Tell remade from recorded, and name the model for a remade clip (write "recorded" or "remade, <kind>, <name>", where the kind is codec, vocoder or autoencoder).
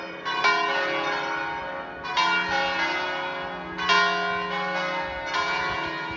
recorded